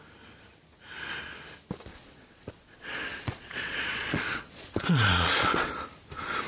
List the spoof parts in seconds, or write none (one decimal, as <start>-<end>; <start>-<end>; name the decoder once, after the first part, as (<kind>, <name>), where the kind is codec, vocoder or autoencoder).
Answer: 1.9-5.8 (vocoder, Vocos)